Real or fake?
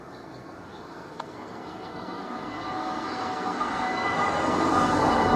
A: fake